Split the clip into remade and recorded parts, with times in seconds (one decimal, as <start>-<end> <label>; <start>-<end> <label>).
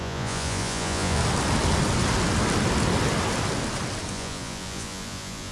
0.0-1.2 remade; 1.2-4.1 recorded; 4.1-5.5 remade